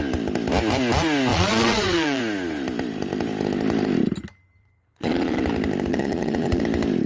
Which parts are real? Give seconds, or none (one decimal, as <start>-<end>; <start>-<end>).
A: 0.0-1.3; 2.2-4.6; 5.4-5.9; 6.6-7.1